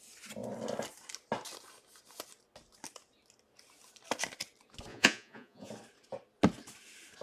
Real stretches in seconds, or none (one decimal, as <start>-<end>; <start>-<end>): 0.0-4.9; 5.7-7.2